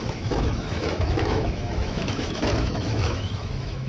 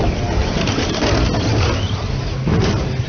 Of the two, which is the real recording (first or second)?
second